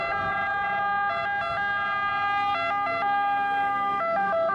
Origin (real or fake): real